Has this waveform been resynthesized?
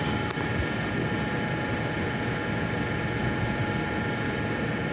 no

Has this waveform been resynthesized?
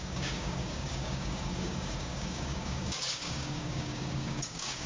yes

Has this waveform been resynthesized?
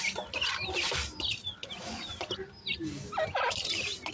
no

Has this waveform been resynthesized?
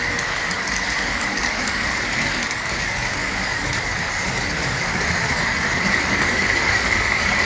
yes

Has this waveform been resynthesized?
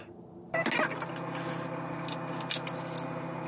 no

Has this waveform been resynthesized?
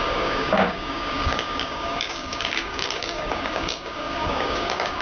yes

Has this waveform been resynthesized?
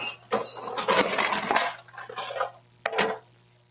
no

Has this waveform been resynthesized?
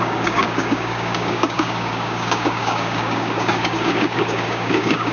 yes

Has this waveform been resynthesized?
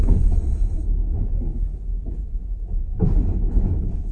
no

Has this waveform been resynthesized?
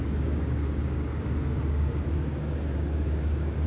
yes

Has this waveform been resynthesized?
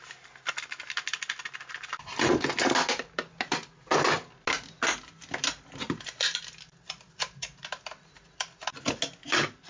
no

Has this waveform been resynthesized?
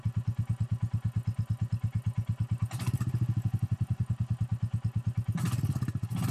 no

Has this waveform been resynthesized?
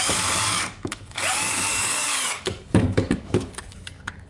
yes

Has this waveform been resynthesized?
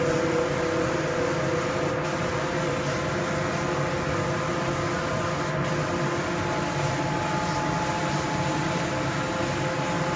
no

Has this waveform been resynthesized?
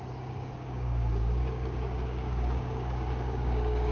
yes